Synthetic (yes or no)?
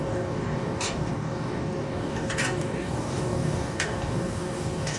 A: yes